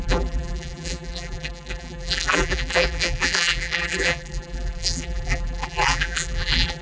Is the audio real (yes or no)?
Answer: no